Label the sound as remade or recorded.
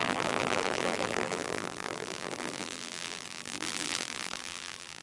remade